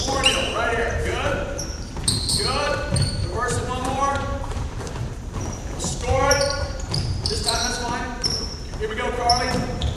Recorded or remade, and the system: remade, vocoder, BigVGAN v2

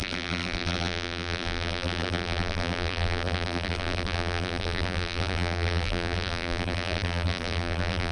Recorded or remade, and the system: remade, vocoder, BigVGAN v2